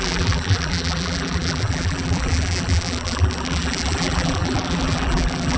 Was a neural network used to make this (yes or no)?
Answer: yes